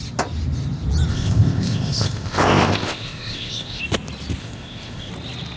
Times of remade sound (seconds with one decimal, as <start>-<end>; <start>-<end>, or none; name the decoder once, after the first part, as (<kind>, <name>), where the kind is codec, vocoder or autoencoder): 1.1-3.8 (codec, ZipCodec); 4.4-5.1